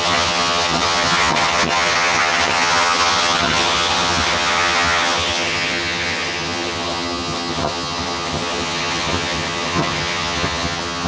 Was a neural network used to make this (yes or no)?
yes